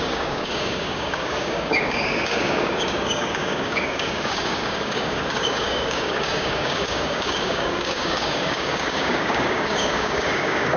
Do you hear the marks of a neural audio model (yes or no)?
yes